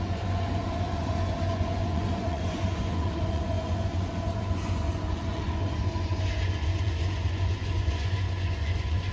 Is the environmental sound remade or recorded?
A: remade